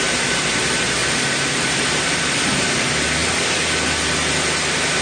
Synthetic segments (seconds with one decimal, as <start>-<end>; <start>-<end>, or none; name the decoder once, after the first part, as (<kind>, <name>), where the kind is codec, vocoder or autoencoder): 0.0-3.2 (vocoder, BigVGAN v2); 4.6-5.0